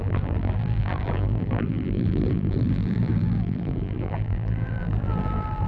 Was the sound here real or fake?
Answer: fake